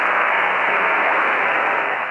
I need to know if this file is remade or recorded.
remade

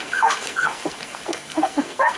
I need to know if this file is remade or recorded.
remade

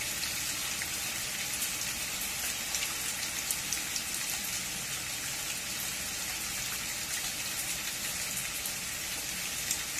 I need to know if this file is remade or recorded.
recorded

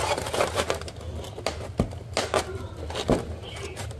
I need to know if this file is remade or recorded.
recorded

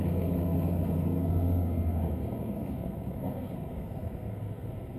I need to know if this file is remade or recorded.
remade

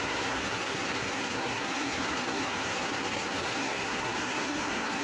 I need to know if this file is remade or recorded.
remade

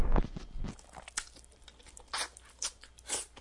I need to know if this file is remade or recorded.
recorded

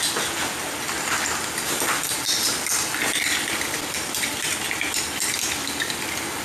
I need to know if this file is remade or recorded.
recorded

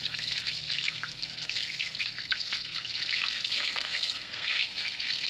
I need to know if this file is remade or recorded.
remade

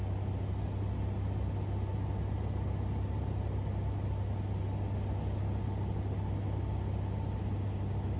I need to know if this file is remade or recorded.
recorded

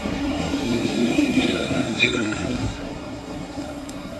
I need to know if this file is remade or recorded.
remade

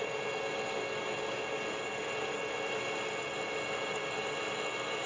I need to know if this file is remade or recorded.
recorded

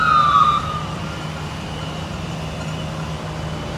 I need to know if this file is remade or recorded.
recorded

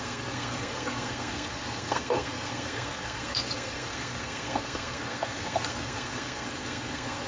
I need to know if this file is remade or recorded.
remade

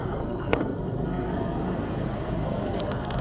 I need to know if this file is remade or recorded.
remade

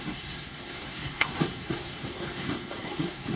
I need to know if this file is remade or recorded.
remade